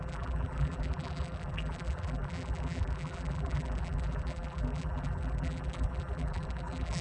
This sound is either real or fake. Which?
fake